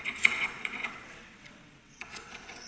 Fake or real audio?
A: fake